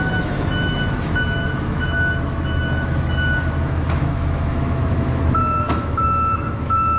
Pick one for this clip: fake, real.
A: fake